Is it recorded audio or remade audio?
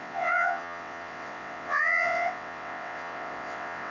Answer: remade